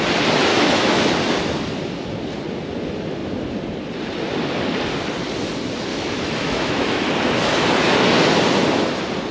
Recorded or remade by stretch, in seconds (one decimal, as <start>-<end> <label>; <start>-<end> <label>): 0.0-0.5 recorded; 0.5-1.1 remade; 1.1-5.9 recorded; 5.9-7.1 remade; 7.1-9.3 recorded